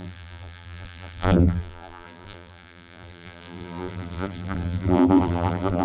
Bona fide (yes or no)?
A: no